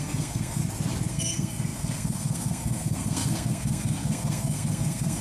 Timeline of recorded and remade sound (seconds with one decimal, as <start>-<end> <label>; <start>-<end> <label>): 0.0-0.6 remade; 0.6-1.1 recorded; 1.1-5.2 remade